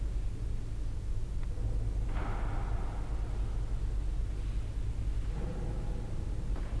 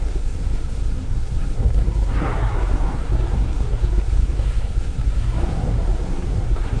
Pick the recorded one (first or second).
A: first